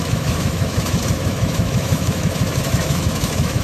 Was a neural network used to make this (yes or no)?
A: yes